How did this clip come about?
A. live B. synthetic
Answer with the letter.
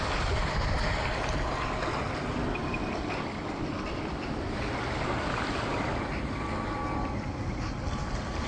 A